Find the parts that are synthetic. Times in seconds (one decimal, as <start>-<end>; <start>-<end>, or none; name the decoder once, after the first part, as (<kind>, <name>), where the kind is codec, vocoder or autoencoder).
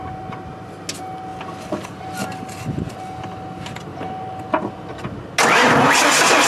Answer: none